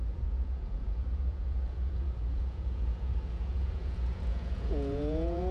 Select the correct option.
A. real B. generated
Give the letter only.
B